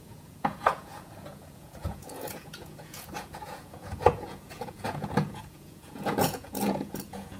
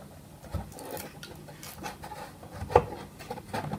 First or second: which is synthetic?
first